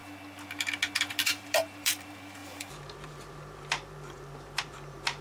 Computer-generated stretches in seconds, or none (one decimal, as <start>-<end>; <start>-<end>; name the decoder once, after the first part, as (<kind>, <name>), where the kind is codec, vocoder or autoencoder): 1.1-5.2 (vocoder, BigVGAN v2)